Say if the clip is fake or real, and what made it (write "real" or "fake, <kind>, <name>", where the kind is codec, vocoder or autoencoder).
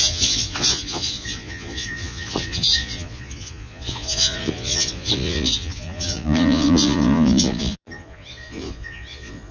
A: fake, vocoder, Vocos